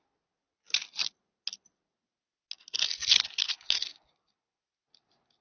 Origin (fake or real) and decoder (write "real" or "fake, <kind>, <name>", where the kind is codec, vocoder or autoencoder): real